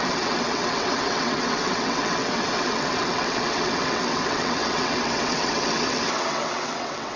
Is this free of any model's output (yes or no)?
no